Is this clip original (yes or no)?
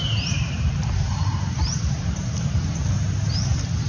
no